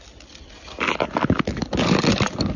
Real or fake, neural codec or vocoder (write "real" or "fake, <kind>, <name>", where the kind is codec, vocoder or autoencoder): real